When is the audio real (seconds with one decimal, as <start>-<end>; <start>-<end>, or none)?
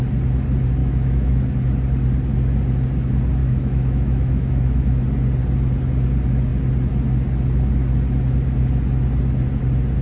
0.0-0.8; 1.4-3.4; 5.0-10.0